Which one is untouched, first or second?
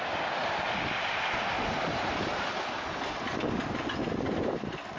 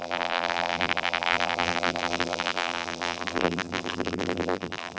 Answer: first